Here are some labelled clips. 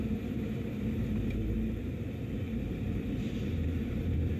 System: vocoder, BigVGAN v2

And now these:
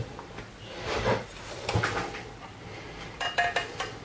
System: none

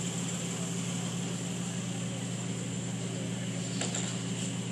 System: none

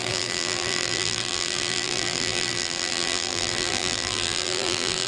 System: vocoder, BigVGAN v2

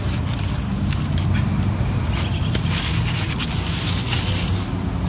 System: none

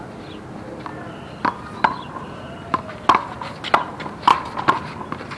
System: none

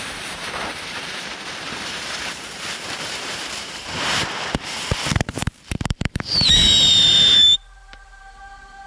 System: vocoder, BigVGAN v2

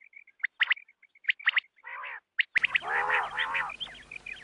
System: none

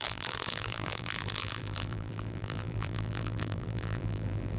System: vocoder, BigVGAN v2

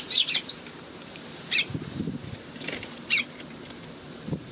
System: vocoder, BigVGAN v2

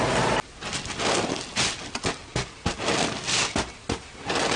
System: none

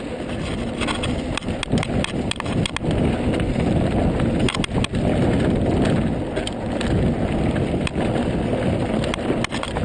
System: none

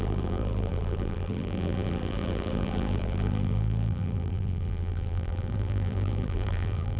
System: vocoder, BigVGAN v2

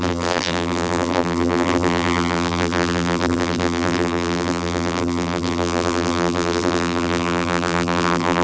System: vocoder, BigVGAN v2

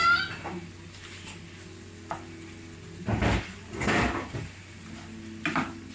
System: none